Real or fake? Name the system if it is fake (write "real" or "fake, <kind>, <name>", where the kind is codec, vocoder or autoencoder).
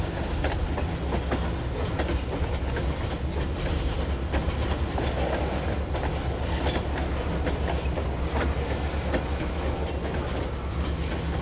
real